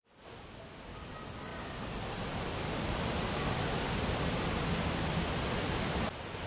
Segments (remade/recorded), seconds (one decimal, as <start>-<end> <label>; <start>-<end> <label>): 0.0-6.5 recorded